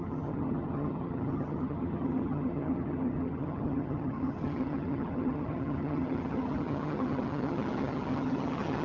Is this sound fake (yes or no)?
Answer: yes